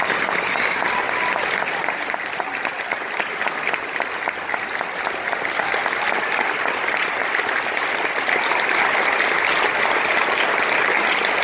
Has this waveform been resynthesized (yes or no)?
no